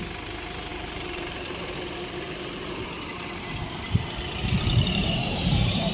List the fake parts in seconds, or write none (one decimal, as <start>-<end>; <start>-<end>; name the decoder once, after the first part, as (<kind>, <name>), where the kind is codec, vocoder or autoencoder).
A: 0.7-4.2 (vocoder, BigVGAN v2); 5.0-5.9